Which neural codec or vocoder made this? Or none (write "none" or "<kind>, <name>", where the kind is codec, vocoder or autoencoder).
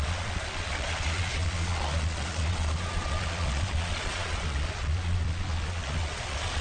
vocoder, Vocos